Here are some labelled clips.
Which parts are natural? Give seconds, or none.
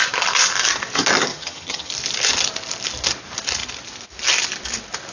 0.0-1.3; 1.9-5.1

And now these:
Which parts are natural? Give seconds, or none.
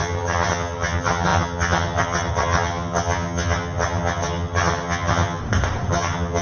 5.4-5.9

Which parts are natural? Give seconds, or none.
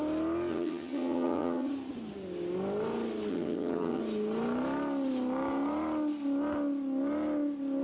0.0-0.5; 1.7-3.3; 4.0-7.8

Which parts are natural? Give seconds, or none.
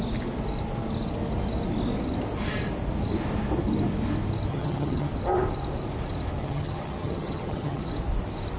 0.0-4.5; 5.1-6.4; 7.9-8.6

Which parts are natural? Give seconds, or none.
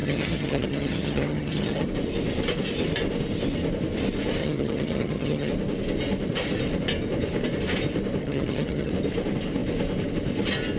1.9-4.4; 5.5-8.2; 8.9-10.8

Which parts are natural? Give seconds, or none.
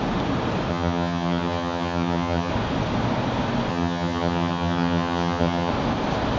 0.0-0.7; 2.5-3.7; 5.7-6.4